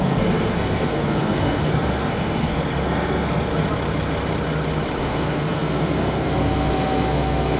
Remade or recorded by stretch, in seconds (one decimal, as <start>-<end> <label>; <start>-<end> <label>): 0.0-3.5 remade; 3.5-5.0 recorded; 5.0-7.6 remade